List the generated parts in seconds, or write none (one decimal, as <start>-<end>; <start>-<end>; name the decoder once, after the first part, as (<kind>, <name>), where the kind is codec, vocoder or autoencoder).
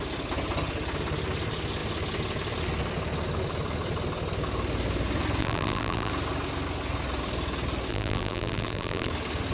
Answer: 5.4-6.1 (vocoder, BigVGAN v2); 7.9-9.1